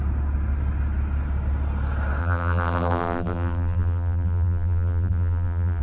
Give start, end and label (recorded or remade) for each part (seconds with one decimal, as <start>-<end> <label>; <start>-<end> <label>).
0.0-2.2 recorded; 2.2-5.8 remade